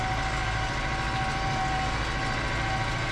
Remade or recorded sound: recorded